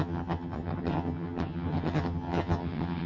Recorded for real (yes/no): no